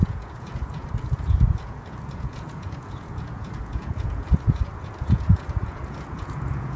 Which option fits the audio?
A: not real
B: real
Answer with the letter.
A